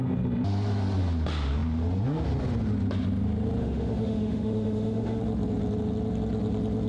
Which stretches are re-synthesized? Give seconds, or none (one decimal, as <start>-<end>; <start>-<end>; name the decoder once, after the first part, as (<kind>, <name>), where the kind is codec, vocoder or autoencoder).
3.6-5.2 (autoencoder, DAC-VAE)